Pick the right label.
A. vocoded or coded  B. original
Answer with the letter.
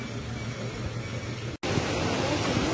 B